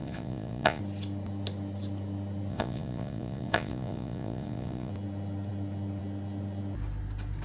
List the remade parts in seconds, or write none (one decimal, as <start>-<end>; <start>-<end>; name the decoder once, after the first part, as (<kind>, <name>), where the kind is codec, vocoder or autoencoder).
0.0-0.8 (vocoder, Vocos); 2.5-4.9